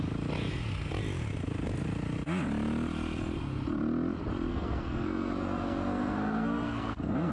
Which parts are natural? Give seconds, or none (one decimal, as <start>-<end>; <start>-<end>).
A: 0.0-4.5

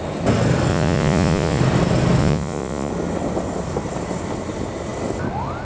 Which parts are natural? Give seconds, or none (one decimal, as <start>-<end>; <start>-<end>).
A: 0.0-0.7; 1.6-2.2; 2.9-5.6

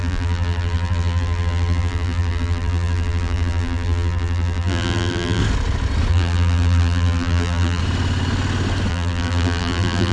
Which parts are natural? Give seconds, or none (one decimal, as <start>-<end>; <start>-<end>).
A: 5.4-6.1; 7.8-8.9

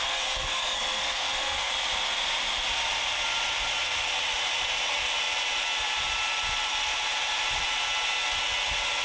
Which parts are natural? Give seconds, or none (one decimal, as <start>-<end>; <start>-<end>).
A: 1.7-9.0

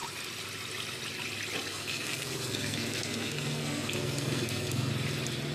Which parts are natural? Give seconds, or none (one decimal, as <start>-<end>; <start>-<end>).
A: 0.0-1.7; 4.9-5.5